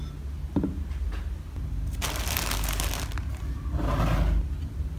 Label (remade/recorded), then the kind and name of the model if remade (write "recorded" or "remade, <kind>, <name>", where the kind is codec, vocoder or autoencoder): recorded